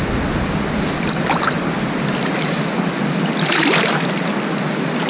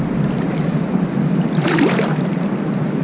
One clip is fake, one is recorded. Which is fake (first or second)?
second